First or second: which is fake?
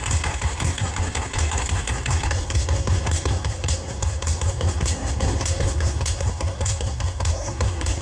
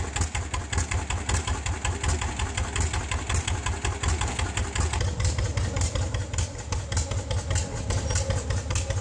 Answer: first